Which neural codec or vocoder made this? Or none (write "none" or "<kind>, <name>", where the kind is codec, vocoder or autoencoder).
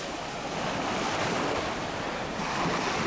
none